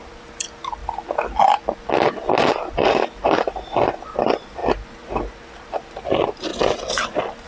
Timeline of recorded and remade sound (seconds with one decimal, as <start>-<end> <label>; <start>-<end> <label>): 0.0-0.8 remade; 0.8-2.5 recorded; 2.5-4.6 remade; 4.6-5.3 recorded; 5.3-6.5 remade; 6.5-7.5 recorded